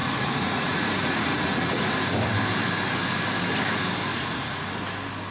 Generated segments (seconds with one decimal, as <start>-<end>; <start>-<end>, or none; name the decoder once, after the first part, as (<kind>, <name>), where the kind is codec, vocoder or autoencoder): 0.0-1.9 (vocoder, Vocos); 4.1-4.7